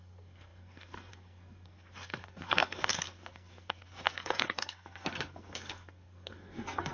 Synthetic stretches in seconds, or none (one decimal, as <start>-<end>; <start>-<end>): 0.0-6.9